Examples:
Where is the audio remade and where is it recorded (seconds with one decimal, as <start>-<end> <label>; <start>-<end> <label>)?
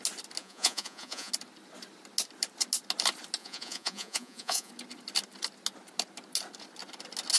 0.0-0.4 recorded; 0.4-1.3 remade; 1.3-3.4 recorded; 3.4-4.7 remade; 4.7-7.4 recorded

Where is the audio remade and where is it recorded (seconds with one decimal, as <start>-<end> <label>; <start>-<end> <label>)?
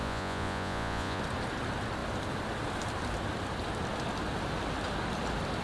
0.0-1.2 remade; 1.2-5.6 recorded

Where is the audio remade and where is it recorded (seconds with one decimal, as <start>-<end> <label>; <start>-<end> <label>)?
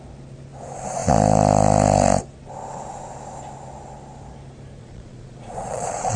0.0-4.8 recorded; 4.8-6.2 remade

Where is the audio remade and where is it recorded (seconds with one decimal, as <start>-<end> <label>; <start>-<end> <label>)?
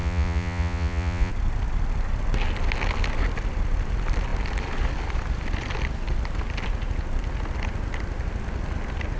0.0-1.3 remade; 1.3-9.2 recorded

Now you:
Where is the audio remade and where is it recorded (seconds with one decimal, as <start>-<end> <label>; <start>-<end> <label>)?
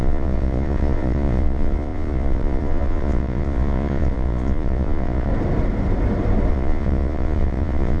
0.0-5.3 remade; 5.3-6.5 recorded; 6.5-8.0 remade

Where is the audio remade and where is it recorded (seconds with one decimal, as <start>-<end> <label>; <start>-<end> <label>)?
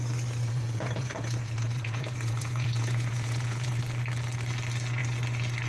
0.0-0.4 recorded; 0.4-3.8 remade; 3.8-5.7 recorded